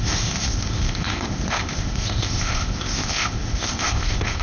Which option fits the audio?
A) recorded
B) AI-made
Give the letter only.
B